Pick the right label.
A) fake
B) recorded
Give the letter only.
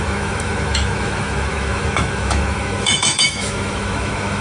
A